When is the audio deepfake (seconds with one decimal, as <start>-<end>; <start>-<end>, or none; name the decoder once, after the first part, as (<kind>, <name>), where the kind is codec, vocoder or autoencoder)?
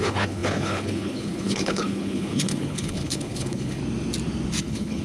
0.0-3.8 (codec, HILCodec); 4.6-5.0